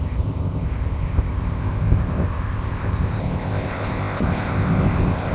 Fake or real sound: fake